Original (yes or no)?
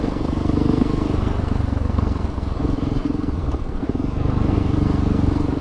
no